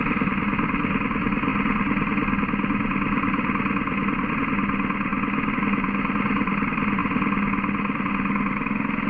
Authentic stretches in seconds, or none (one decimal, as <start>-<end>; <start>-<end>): 0.0-9.1